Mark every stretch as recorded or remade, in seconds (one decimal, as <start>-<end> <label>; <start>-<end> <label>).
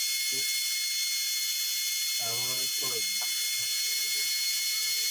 0.0-3.7 recorded; 3.7-5.1 remade